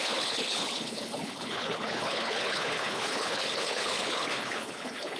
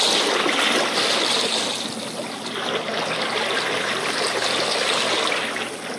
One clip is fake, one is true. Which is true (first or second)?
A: second